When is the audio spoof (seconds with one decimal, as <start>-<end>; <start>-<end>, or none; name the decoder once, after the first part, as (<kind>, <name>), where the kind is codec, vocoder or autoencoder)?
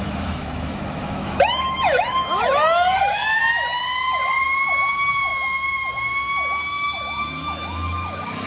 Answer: 0.0-3.4 (autoencoder, DAC-VAE); 4.4-8.5